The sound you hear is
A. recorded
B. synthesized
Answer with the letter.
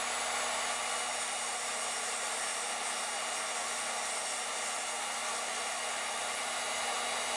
A